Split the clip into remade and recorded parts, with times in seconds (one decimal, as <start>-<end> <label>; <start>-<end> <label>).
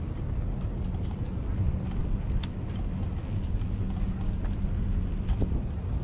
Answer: 0.0-6.0 recorded